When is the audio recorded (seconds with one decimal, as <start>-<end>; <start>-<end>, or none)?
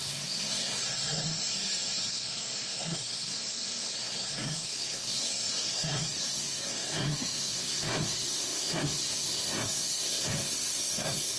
none